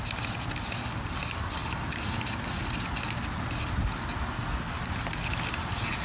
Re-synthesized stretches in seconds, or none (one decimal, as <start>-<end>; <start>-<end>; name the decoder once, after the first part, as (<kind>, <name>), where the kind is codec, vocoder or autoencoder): none